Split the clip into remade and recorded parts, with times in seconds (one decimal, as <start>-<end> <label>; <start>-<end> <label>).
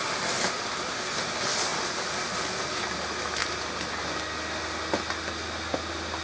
0.0-6.2 recorded